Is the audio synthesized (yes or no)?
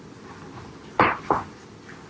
no